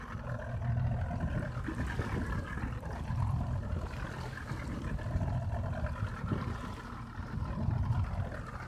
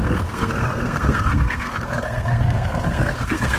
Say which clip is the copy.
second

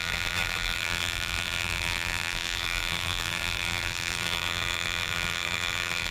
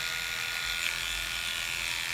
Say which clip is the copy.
first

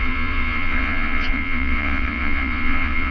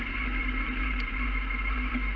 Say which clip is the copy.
first